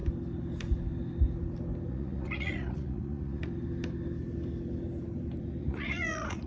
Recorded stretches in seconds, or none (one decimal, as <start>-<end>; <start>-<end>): 0.0-1.9; 3.4-5.6